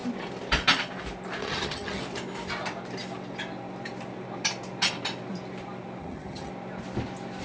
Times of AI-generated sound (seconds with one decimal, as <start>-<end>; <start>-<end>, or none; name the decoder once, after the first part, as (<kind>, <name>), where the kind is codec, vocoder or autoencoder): 1.4-2.0 (vocoder, HiFi-GAN); 6.0-6.5